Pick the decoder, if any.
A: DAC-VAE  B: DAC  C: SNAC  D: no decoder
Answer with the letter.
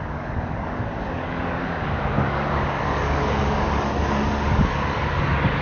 B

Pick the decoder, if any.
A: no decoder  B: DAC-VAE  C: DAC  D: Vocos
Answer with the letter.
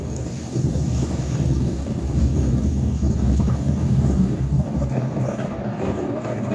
C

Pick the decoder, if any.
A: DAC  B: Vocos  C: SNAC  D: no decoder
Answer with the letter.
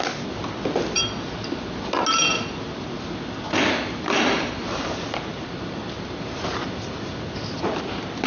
D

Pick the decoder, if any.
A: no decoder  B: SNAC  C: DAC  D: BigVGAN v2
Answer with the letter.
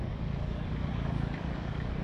C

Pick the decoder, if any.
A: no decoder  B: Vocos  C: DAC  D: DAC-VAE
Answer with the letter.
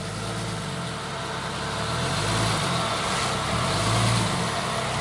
A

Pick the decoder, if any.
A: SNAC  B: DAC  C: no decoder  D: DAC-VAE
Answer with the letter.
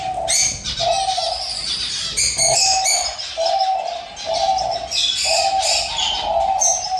C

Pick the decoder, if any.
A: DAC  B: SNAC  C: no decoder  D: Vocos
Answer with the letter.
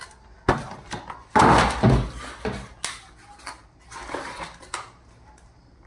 C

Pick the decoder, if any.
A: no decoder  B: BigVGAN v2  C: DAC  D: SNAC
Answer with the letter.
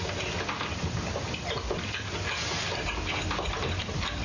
A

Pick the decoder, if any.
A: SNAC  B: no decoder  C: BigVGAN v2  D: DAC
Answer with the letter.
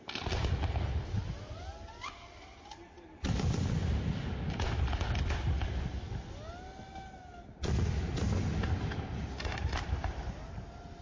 B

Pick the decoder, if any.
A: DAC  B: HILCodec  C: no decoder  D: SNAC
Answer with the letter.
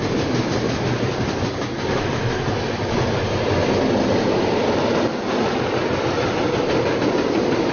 C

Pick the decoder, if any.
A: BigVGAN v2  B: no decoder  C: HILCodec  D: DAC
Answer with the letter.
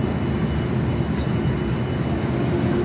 B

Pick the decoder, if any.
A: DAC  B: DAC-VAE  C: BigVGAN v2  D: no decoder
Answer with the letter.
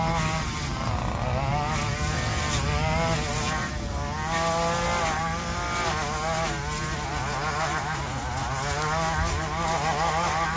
D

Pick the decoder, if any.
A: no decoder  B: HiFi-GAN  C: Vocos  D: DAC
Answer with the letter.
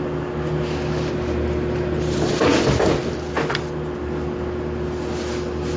A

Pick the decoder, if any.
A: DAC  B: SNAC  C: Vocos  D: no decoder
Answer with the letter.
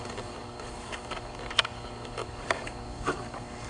A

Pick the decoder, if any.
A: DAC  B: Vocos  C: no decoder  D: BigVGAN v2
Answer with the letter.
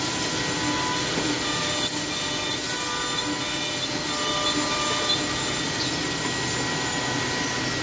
C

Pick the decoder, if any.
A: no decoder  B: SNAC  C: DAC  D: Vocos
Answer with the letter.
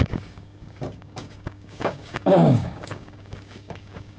C